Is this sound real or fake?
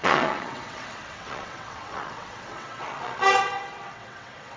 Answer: fake